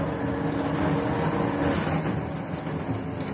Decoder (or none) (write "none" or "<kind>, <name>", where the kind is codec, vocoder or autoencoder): none